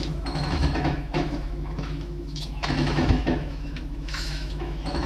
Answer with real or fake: fake